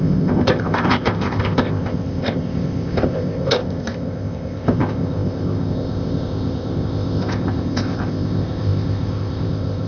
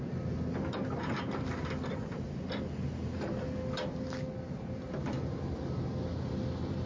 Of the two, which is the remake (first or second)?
first